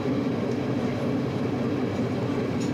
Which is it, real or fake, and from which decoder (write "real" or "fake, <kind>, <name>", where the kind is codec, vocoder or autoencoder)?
real